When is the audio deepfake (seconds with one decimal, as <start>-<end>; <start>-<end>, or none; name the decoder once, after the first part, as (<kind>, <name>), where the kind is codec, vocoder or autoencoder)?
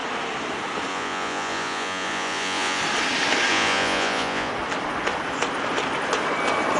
0.9-2.8 (vocoder, Vocos); 3.5-4.5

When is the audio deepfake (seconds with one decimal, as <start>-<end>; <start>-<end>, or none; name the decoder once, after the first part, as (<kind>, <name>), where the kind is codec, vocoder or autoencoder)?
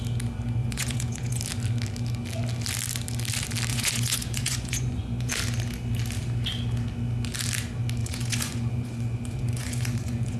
0.6-1.4 (vocoder, Vocos); 3.7-5.3; 8.0-10.4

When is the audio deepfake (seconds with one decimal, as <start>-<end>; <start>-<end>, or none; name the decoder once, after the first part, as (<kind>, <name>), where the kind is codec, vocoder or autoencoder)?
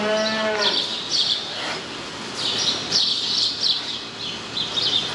none